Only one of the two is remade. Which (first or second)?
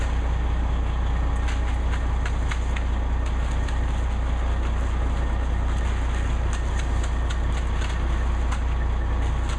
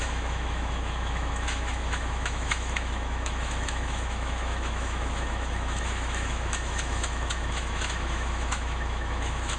second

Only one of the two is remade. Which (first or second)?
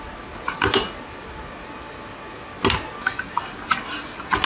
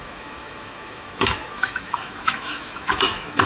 second